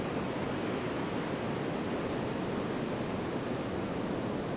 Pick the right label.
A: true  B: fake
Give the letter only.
A